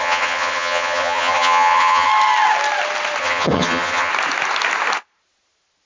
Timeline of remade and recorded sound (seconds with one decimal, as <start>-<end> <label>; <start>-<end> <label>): 0.0-2.1 remade; 2.1-3.2 recorded; 3.2-4.1 remade; 4.1-5.9 recorded